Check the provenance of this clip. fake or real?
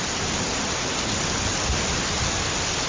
real